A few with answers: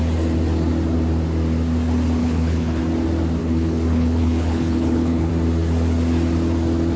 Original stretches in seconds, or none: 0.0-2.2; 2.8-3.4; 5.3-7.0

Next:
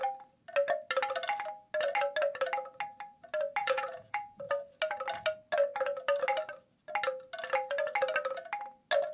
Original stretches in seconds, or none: 0.0-3.6; 4.5-9.1

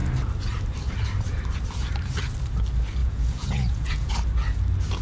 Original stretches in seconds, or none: 0.0-3.0; 4.1-5.0

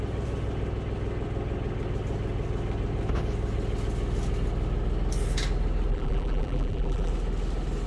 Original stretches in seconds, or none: 0.0-5.9; 7.1-7.9

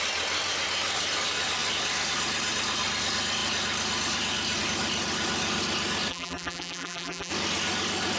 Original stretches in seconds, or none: 0.0-6.1; 7.3-8.2

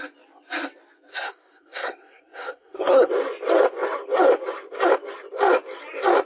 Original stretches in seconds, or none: 0.0-1.1; 3.1-6.3

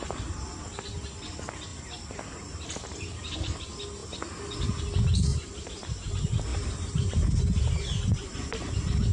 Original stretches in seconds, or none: 0.0-1.7; 3.6-5.3; 6.1-6.5; 7.4-9.1

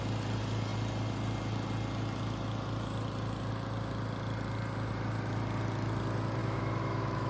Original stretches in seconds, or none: 0.0-6.4